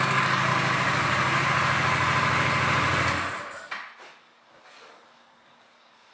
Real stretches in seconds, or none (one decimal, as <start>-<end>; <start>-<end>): 0.5-4.0